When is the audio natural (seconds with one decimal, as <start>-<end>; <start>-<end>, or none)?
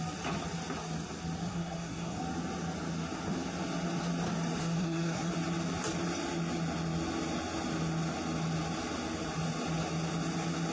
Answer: 0.0-1.4; 2.2-4.6; 5.3-10.7